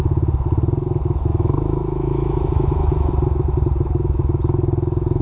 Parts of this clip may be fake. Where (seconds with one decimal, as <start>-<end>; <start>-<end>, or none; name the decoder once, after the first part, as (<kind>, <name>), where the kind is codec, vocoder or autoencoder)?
1.3-3.1 (autoencoder, DAC-VAE)